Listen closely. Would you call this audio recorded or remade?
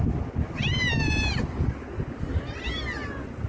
recorded